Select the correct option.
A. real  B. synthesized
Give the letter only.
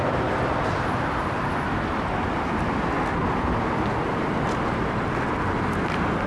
A